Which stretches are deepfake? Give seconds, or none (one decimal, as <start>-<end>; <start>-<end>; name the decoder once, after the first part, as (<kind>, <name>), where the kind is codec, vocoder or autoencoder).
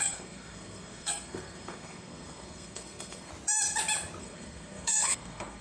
0.0-3.3 (codec, SNAC); 4.2-5.6